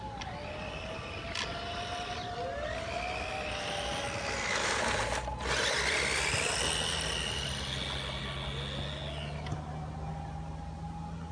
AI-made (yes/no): no